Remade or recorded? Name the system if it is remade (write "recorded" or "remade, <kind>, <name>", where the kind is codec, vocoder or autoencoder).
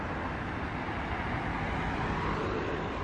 recorded